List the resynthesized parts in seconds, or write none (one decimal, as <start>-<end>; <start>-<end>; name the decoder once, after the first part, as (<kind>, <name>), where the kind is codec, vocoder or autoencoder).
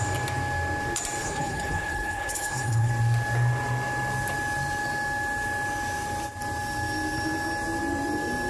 1.2-2.9 (codec, HILCodec)